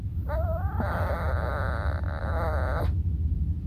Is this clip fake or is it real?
real